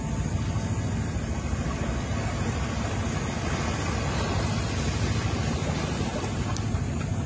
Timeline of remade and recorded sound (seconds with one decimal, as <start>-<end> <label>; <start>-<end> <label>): 0.0-7.3 recorded